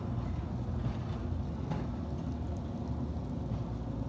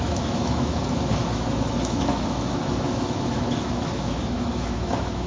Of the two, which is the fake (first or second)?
second